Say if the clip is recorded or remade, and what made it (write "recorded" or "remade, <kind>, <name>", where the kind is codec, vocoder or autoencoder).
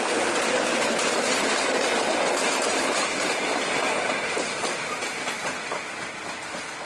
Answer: recorded